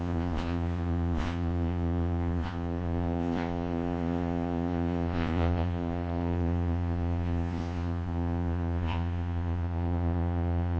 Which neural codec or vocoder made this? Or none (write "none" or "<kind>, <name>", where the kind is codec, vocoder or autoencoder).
vocoder, Vocos